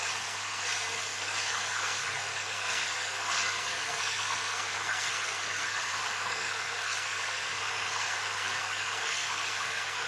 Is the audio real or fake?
fake